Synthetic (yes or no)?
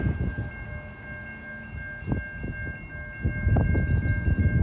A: no